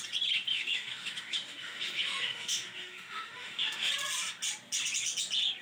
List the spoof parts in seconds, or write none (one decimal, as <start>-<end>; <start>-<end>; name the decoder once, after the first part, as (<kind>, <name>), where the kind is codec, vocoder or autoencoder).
0.5-3.9 (autoencoder, DAC-VAE)